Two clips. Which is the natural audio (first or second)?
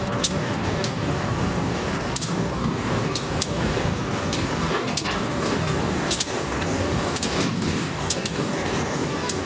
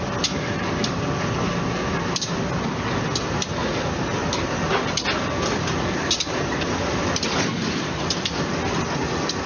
second